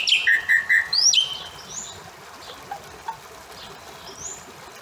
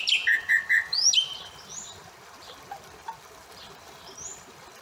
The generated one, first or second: second